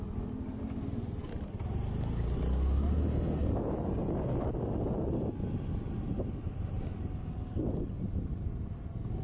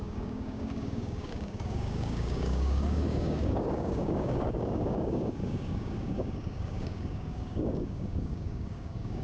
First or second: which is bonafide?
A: first